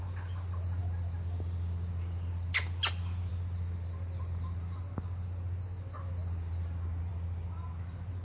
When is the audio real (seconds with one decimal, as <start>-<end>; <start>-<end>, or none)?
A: 0.0-8.2

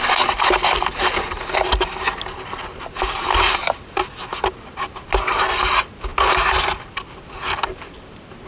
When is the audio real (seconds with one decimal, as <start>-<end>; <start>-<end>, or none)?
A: 0.0-8.5

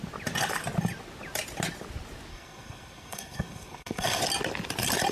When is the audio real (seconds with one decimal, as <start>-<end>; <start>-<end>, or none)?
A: 0.0-2.3; 4.2-5.1